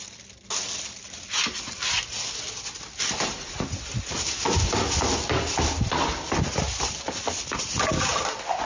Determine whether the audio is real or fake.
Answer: real